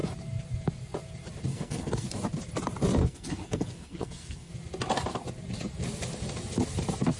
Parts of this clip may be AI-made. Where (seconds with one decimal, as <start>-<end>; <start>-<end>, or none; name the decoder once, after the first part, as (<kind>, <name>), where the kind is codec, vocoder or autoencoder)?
1.5-2.1 (codec, SNAC); 3.0-4.5